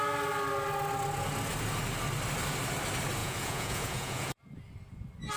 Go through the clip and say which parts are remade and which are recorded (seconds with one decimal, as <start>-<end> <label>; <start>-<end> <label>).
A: 0.0-3.2 recorded; 3.2-4.4 remade; 4.4-5.4 recorded